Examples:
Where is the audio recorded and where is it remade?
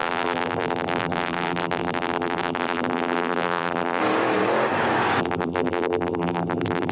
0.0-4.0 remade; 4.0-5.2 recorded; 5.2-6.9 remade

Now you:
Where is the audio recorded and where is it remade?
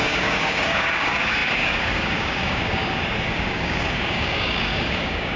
0.0-5.4 remade